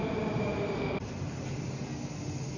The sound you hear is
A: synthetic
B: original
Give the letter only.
B